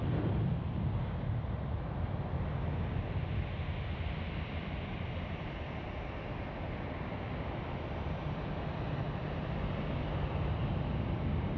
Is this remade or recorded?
recorded